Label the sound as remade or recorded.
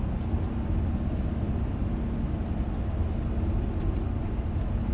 recorded